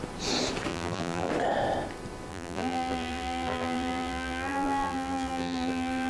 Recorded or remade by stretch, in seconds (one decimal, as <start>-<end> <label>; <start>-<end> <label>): 0.0-0.7 recorded; 0.7-1.3 remade; 1.3-2.3 recorded; 2.3-6.1 remade